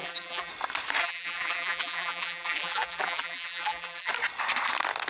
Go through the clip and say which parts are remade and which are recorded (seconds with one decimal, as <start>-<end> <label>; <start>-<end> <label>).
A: 0.0-0.5 remade; 0.5-1.0 recorded; 1.0-4.1 remade; 4.1-5.1 recorded